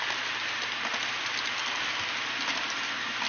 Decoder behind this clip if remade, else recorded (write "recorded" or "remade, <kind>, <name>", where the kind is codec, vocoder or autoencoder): recorded